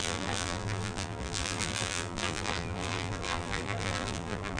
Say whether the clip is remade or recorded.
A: remade